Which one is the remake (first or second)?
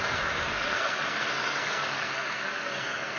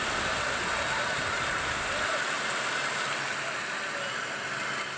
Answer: first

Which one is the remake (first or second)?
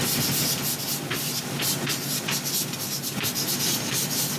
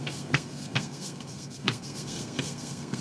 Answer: second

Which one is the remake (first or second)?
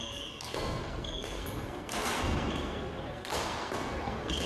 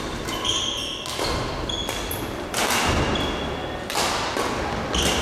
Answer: first